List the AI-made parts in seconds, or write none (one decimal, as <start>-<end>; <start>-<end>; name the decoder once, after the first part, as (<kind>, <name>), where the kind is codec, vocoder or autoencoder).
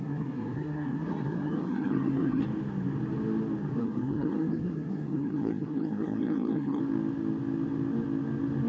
0.0-2.4 (codec, SNAC); 3.8-6.8